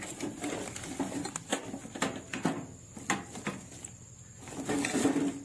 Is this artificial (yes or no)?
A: no